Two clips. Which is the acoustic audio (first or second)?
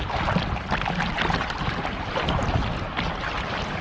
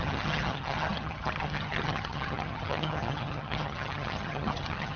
first